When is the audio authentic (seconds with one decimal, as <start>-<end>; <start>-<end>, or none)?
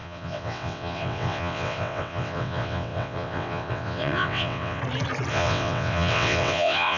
4.8-5.3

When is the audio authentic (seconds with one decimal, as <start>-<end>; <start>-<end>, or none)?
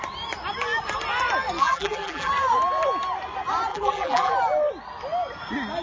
0.0-1.6; 2.3-3.7; 4.3-5.8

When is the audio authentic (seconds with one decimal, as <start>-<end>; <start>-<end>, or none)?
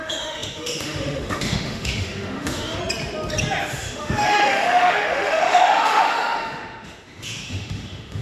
2.8-3.7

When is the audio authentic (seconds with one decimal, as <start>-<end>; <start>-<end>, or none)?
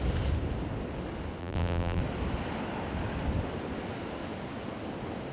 0.0-1.4; 2.0-5.3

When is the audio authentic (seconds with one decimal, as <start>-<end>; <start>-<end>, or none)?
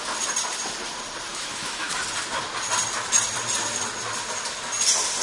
0.0-1.3; 1.9-5.2